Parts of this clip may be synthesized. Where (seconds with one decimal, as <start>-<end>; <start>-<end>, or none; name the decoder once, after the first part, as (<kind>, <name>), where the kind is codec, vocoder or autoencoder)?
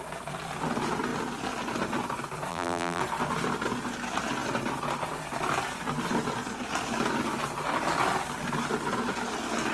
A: 2.5-3.0 (vocoder, BigVGAN v2)